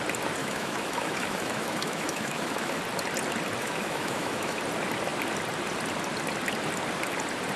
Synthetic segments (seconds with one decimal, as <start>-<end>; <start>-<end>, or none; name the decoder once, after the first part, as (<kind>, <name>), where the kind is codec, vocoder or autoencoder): 0.4-2.8 (autoencoder, DAC-VAE); 3.6-4.6